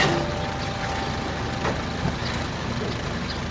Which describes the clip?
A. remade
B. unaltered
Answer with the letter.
B